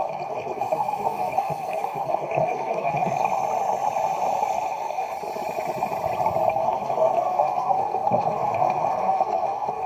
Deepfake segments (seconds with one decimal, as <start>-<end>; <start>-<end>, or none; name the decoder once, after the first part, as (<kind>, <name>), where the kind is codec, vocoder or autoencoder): 0.0-3.2 (codec, SNAC); 4.5-5.0; 6.5-9.9